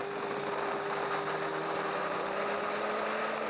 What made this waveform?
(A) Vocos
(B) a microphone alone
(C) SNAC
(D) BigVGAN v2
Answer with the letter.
D